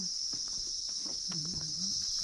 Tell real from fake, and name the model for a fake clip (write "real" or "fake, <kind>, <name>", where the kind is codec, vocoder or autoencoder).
fake, vocoder, BigVGAN v2